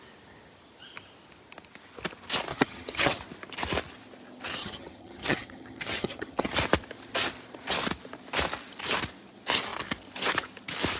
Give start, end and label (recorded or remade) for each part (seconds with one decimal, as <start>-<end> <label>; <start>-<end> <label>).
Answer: 0.0-2.5 recorded; 2.5-3.2 remade; 3.2-4.6 recorded; 4.6-6.5 remade; 6.5-11.0 recorded